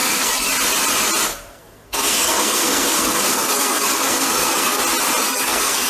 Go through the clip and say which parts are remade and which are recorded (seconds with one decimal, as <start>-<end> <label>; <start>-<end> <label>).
0.0-0.5 remade; 0.5-1.3 recorded; 1.3-4.8 remade; 4.8-5.2 recorded; 5.2-5.9 remade